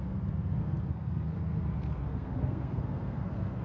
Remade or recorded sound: remade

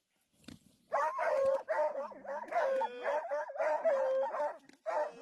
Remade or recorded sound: recorded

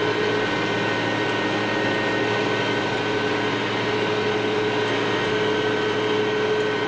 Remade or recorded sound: recorded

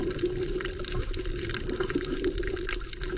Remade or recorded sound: recorded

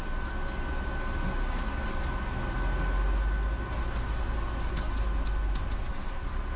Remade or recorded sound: recorded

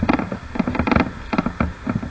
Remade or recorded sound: recorded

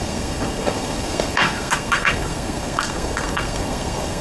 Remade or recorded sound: remade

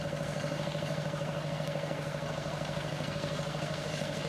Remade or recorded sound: remade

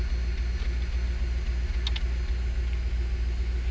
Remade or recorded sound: recorded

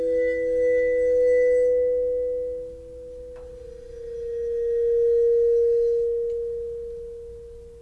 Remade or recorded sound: recorded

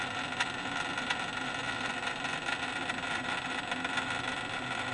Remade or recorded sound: recorded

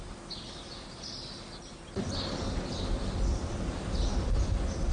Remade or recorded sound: recorded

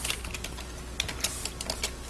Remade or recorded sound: recorded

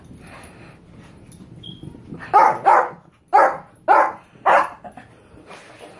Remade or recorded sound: recorded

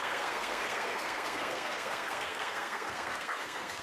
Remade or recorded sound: remade